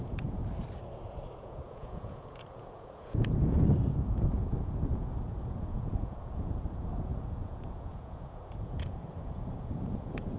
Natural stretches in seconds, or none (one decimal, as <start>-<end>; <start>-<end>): 0.4-1.4

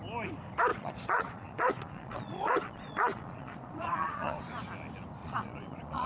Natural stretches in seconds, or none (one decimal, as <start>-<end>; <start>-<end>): 0.0-0.7; 4.4-5.2

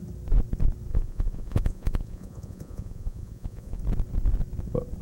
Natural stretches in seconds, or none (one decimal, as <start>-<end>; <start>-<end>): 0.0-0.9; 3.8-5.0